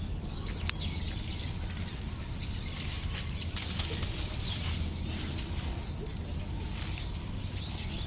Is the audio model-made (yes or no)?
no